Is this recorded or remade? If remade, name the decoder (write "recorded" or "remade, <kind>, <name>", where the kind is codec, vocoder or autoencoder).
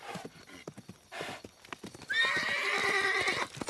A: recorded